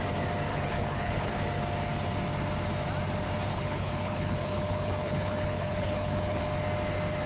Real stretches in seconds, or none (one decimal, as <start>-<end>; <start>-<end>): 0.0-0.5; 1.3-3.5; 6.4-7.3